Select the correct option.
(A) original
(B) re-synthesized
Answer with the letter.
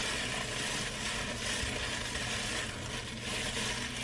A